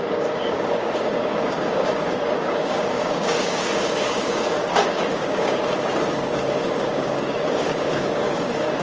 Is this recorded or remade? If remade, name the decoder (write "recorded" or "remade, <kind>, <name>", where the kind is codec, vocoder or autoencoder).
remade, codec, DAC